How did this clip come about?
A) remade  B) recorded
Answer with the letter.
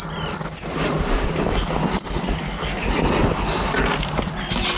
B